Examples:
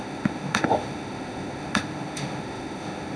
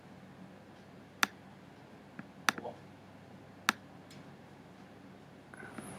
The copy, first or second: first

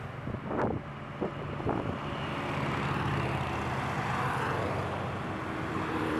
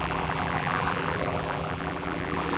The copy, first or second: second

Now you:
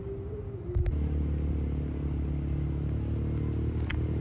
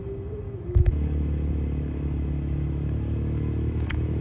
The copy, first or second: second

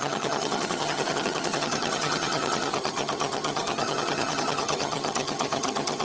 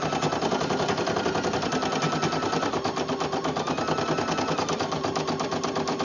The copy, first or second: first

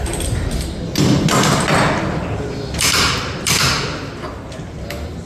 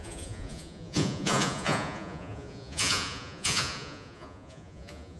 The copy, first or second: second